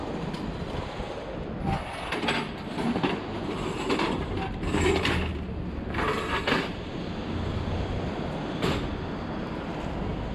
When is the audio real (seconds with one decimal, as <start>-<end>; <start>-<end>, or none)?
0.0-10.3